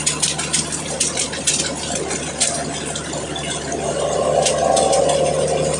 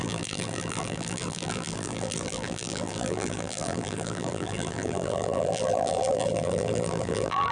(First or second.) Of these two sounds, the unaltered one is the first